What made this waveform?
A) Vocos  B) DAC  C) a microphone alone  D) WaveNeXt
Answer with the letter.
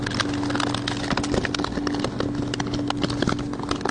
C